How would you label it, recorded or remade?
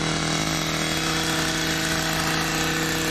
recorded